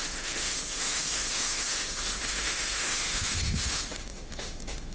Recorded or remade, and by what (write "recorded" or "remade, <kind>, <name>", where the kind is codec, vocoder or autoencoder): remade, autoencoder, DAC-VAE